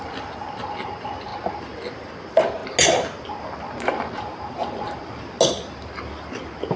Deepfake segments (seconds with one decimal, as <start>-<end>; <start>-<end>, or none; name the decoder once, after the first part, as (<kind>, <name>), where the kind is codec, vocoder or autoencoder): none